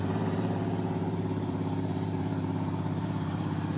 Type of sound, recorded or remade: remade